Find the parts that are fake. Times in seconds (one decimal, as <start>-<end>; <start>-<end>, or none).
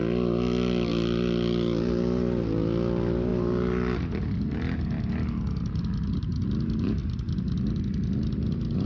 none